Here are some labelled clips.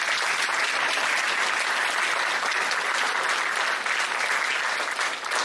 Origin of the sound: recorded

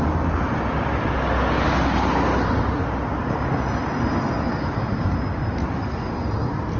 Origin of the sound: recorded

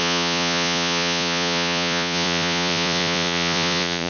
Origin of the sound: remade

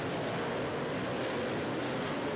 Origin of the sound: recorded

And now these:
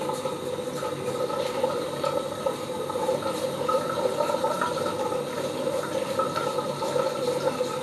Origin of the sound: recorded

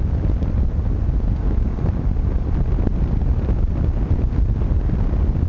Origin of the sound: recorded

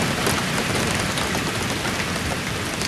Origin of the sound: recorded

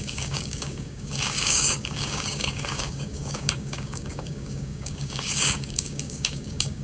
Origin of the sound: remade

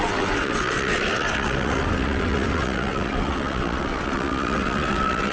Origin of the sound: remade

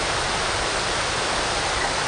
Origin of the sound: recorded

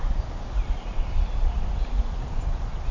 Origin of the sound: recorded